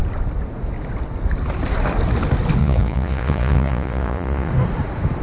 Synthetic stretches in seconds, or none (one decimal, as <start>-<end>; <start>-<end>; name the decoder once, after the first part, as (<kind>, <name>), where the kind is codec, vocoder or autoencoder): 2.6-4.5 (vocoder, Vocos)